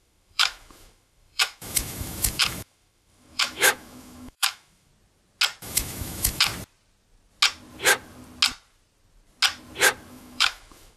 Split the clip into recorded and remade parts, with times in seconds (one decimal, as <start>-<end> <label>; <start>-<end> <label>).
0.0-4.9 remade; 4.9-5.6 recorded; 5.6-6.5 remade; 6.5-10.1 recorded; 10.1-11.0 remade